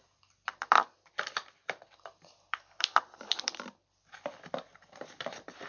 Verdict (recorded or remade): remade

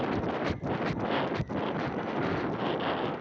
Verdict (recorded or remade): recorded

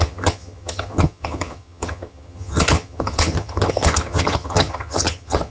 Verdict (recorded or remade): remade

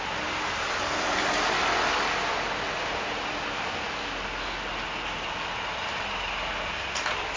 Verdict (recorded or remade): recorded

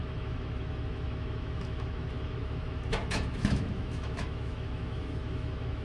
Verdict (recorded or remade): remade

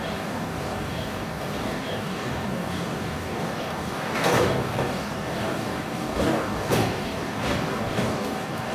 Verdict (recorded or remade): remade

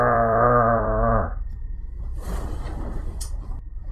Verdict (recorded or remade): remade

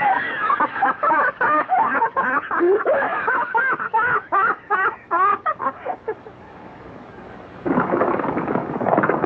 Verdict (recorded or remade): remade